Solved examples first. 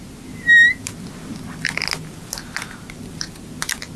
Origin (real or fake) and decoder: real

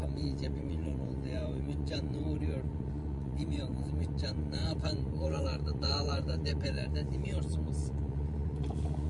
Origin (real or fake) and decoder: fake, vocoder, Vocos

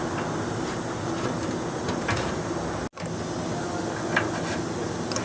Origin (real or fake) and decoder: real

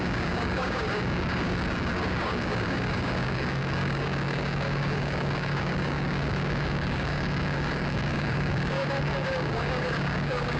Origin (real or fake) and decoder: fake, codec, DAC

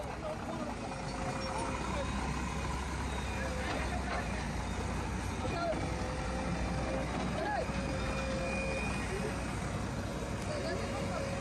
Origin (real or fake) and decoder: real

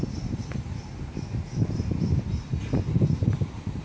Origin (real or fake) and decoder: real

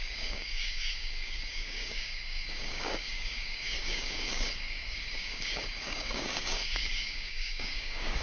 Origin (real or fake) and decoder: fake, codec, DAC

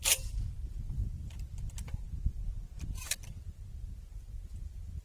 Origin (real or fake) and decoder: real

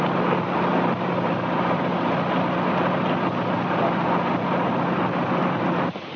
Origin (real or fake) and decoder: real